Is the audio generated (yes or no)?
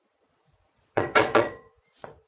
yes